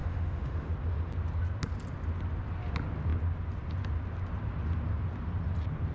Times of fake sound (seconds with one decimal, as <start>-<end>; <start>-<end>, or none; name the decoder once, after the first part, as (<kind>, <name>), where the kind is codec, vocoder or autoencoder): 0.0-0.7 (autoencoder, DAC-VAE)